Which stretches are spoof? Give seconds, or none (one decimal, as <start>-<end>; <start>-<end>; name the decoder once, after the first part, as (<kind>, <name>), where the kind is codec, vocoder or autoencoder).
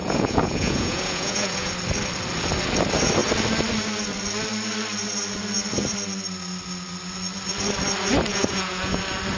0.0-1.7 (vocoder, Vocos); 8.3-9.0